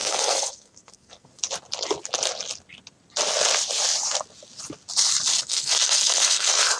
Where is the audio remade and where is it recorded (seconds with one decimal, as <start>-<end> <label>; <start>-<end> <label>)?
0.0-1.3 remade; 1.3-5.4 recorded; 5.4-6.8 remade